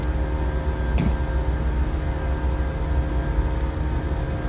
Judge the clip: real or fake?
real